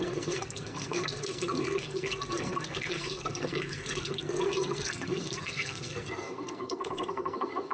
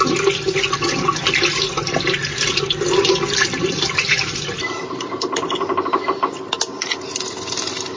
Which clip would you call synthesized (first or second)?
first